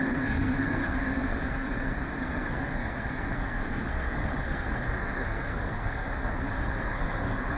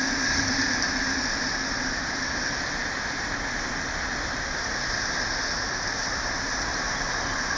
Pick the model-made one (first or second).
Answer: first